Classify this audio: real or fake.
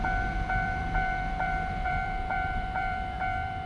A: fake